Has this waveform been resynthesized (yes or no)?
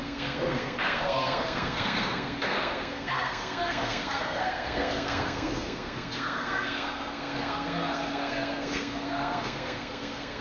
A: yes